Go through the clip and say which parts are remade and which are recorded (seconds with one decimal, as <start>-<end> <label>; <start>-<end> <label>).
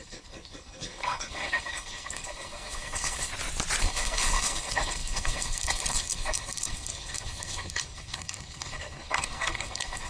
0.0-3.3 remade; 3.3-3.8 recorded; 3.8-10.1 remade